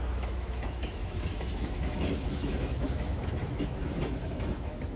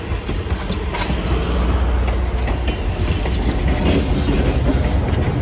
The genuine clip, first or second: second